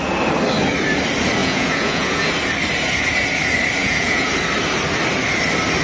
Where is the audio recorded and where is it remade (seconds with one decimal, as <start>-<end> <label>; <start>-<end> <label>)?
0.0-1.4 recorded; 1.4-2.3 remade; 2.3-3.8 recorded; 3.8-4.3 remade; 4.3-5.8 recorded